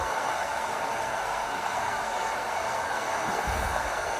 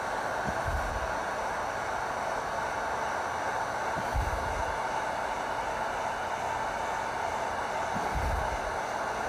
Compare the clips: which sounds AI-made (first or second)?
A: first